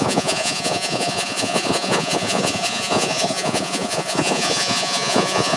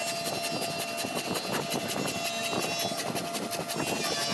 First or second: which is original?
second